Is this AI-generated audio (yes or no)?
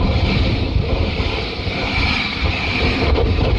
yes